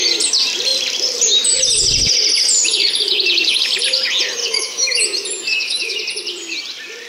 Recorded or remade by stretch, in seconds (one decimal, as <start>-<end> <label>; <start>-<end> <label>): 0.0-4.4 recorded; 4.4-5.0 remade; 5.0-5.5 recorded; 5.5-6.0 remade; 6.0-7.1 recorded